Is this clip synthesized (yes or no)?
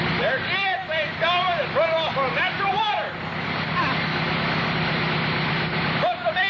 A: no